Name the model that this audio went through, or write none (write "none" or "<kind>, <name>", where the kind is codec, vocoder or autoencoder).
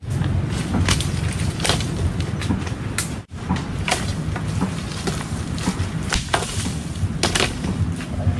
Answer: none